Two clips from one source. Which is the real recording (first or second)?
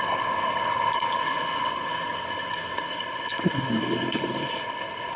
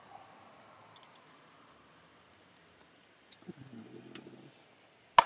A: second